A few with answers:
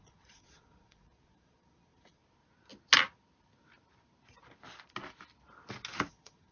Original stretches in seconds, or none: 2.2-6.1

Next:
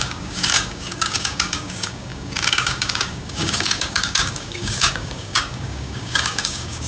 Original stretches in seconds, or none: none

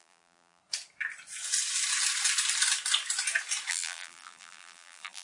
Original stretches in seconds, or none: 0.6-3.7